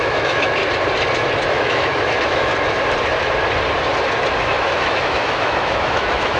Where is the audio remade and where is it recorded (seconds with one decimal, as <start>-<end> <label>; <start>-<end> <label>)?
0.0-0.6 remade; 0.6-1.5 recorded; 1.5-2.5 remade; 2.5-4.4 recorded; 4.4-6.4 remade